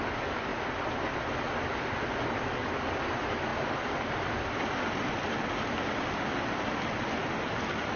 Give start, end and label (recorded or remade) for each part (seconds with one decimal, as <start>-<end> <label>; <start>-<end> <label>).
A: 0.0-3.5 recorded; 3.5-5.7 remade; 5.7-7.2 recorded; 7.2-8.0 remade